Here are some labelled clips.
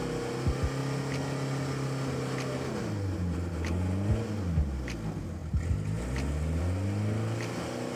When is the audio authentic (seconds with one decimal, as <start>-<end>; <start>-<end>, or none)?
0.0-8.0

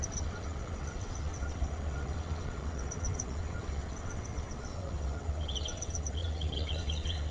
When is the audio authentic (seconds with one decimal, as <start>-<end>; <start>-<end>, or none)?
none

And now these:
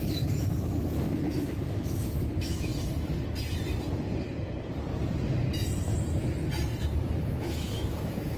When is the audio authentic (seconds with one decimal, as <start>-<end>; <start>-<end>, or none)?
2.7-7.3